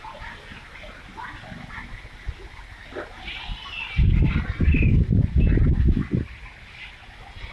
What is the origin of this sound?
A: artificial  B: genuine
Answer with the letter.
B